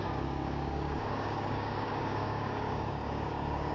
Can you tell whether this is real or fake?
fake